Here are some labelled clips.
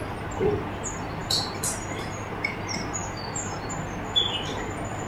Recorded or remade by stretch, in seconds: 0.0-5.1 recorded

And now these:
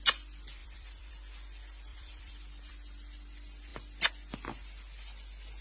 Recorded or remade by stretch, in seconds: 0.0-0.6 recorded; 0.6-1.1 remade; 1.1-1.9 recorded; 1.9-2.7 remade; 2.7-5.6 recorded